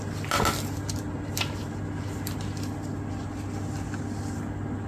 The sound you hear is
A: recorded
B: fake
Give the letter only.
A